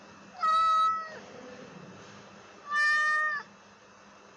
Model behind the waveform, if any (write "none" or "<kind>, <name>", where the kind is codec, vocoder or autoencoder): none